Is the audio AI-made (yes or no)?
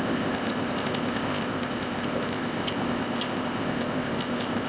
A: yes